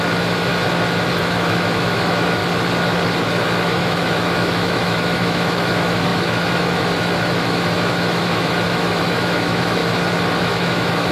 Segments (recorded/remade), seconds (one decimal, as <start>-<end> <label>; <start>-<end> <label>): 0.0-0.5 remade; 0.5-1.2 recorded; 1.2-2.4 remade; 2.4-3.3 recorded; 3.3-9.8 remade; 9.8-10.4 recorded; 10.4-11.1 remade